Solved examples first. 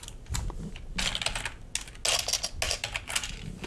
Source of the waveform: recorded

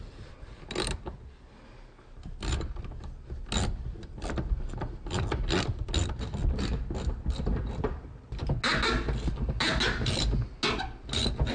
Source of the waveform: recorded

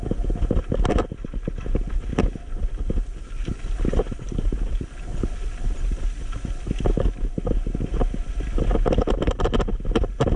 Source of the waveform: recorded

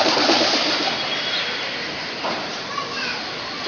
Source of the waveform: remade